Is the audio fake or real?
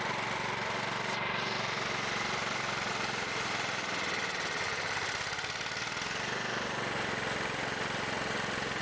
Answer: real